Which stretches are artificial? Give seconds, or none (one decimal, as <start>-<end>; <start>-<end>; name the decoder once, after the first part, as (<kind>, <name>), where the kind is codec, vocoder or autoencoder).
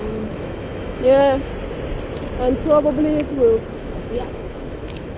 0.0-1.5 (autoencoder, DAC-VAE); 3.7-5.2